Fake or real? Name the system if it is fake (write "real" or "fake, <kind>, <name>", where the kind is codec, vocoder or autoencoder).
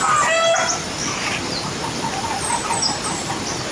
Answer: real